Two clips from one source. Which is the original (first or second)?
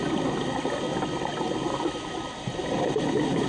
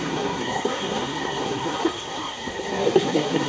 first